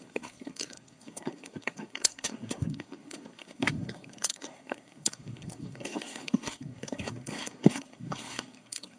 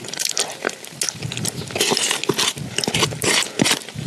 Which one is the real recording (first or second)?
second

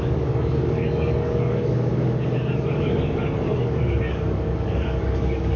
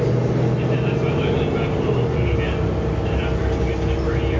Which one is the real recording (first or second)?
second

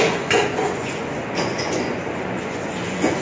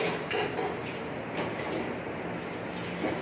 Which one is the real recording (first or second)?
second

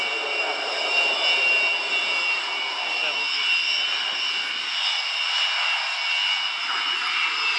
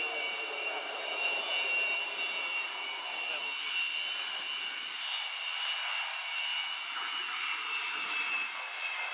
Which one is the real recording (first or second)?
first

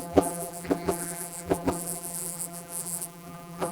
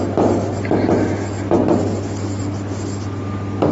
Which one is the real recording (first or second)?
second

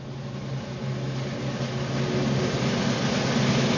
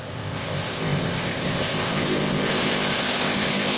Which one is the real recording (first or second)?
first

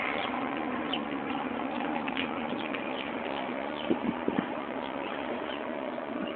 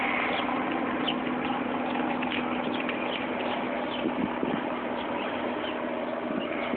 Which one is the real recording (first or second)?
second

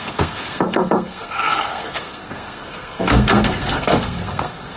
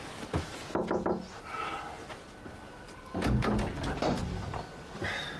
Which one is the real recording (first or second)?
second